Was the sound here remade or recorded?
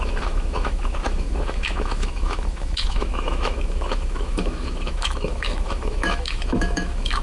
remade